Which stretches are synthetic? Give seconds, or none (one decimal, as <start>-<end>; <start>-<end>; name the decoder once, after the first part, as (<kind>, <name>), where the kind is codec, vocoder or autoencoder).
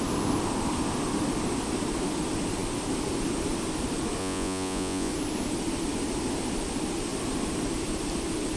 4.2-5.1 (vocoder, Vocos)